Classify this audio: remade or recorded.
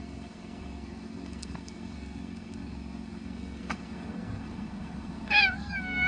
remade